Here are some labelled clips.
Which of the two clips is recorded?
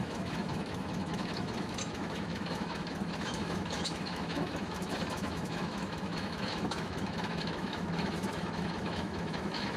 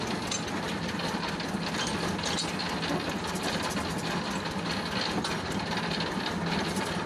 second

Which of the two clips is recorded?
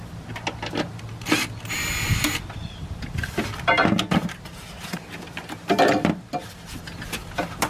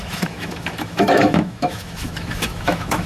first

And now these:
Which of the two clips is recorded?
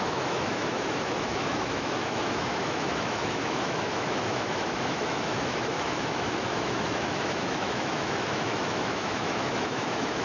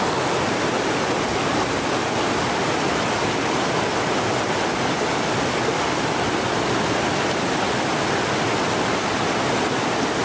second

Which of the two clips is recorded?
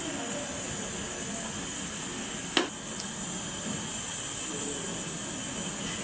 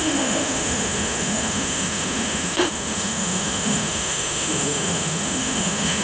first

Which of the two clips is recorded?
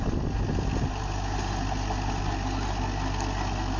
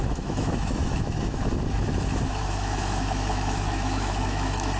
first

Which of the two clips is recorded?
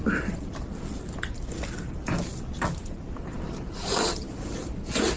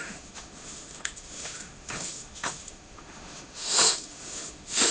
first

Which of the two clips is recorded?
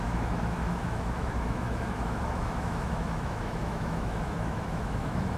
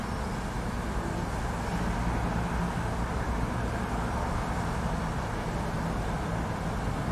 second